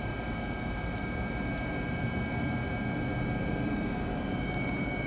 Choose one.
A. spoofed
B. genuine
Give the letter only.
A